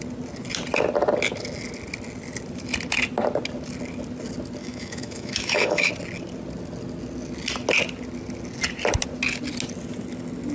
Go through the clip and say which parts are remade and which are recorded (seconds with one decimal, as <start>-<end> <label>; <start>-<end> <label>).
0.0-4.6 recorded; 4.6-5.9 remade; 5.9-10.5 recorded